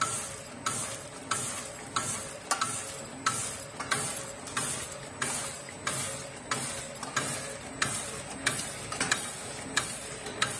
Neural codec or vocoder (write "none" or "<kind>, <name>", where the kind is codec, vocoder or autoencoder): none